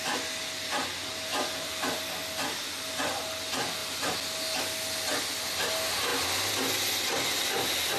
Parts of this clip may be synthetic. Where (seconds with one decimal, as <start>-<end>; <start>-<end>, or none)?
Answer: 1.3-2.0